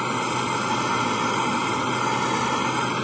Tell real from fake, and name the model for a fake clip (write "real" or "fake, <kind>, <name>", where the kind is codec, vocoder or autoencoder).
real